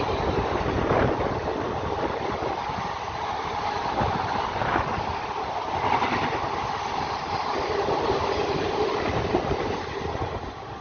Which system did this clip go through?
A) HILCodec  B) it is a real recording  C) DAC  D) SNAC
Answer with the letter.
B